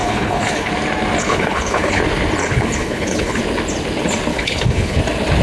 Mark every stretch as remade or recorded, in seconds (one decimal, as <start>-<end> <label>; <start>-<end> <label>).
0.0-0.7 remade; 0.7-1.2 recorded; 1.2-2.0 remade; 2.0-2.4 recorded; 2.4-3.4 remade; 3.4-4.3 recorded; 4.3-5.0 remade; 5.0-5.4 recorded